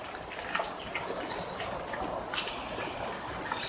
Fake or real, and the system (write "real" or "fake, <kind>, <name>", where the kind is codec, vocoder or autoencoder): real